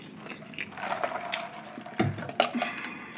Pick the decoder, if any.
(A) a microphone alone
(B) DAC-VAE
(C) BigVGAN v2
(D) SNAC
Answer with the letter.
A